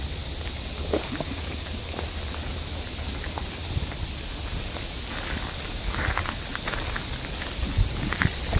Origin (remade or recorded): recorded